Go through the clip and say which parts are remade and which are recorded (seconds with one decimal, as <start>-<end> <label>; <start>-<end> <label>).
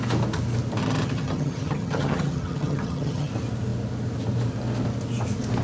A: 0.0-0.8 recorded; 0.8-3.3 remade; 3.3-5.6 recorded